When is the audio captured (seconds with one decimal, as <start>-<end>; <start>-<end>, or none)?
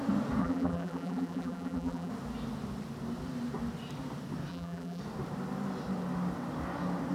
0.0-0.4; 2.1-4.5; 5.0-7.1